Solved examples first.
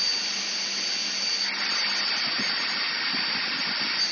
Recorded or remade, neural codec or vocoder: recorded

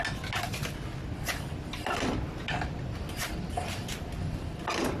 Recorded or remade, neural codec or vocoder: recorded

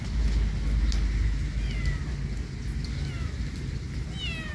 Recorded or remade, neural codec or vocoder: recorded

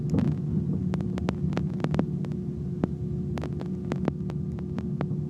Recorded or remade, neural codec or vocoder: recorded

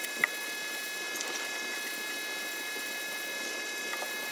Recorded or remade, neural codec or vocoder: recorded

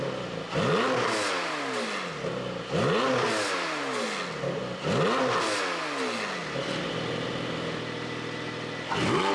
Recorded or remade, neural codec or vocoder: recorded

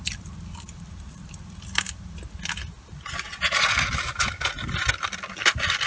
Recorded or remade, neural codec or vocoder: recorded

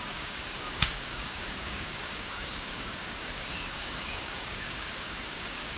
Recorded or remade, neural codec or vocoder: remade, codec, DAC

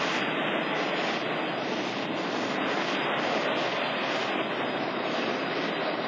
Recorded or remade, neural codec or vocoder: recorded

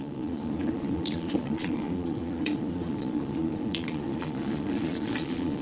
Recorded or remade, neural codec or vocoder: remade, vocoder, Vocos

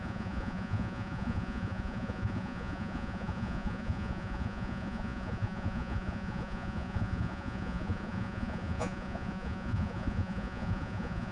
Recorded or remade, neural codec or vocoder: remade, vocoder, Vocos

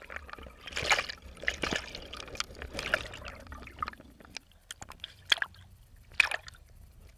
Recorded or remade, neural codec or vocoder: recorded